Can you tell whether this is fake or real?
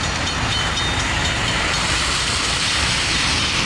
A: fake